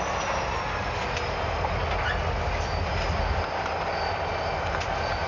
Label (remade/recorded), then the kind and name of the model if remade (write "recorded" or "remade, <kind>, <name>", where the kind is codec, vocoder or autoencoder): recorded